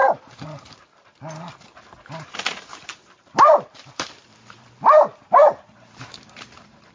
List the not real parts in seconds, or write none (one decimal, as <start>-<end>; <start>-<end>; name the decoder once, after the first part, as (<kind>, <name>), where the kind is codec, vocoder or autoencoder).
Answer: 0.0-0.6 (vocoder, BigVGAN v2); 2.7-6.9